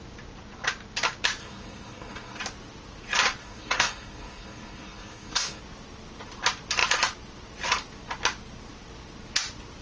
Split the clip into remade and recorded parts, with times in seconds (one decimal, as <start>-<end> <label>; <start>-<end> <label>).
0.0-1.4 recorded; 1.4-2.4 remade; 2.4-3.4 recorded; 3.4-5.6 remade; 5.6-9.8 recorded

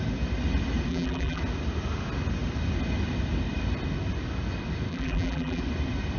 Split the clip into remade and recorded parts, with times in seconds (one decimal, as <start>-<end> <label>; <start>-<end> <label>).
0.0-0.9 recorded; 0.9-1.4 remade; 1.4-4.9 recorded; 4.9-5.6 remade; 5.6-6.2 recorded

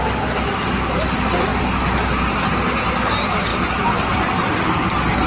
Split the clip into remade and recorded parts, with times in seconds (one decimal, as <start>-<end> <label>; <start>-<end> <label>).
0.0-5.3 recorded

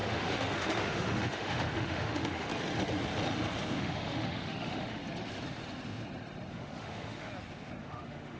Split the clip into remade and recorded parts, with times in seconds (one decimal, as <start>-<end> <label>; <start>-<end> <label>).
0.0-2.5 remade; 2.5-3.8 recorded; 3.8-5.0 remade; 5.0-6.5 recorded; 6.5-7.3 remade; 7.3-7.8 recorded; 7.8-8.4 remade

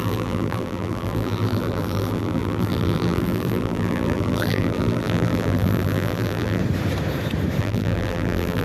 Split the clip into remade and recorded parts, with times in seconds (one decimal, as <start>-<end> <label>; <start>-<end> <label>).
0.0-6.6 remade; 6.6-7.6 recorded; 7.6-8.6 remade

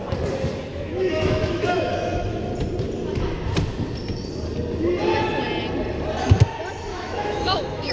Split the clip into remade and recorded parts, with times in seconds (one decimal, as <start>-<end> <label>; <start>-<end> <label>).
0.0-0.7 recorded; 0.7-2.5 remade; 2.5-6.9 recorded; 6.9-7.9 remade